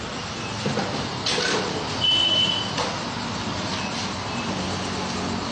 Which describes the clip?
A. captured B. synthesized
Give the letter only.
A